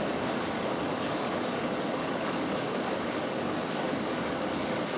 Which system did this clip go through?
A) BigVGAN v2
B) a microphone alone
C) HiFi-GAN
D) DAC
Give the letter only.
D